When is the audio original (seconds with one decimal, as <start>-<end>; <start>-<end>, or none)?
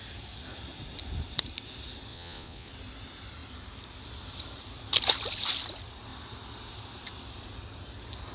0.0-2.1; 2.7-8.3